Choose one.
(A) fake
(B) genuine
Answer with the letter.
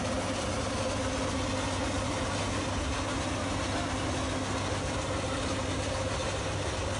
B